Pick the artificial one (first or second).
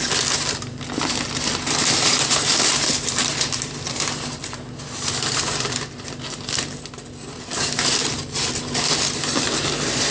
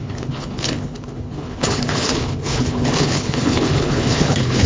second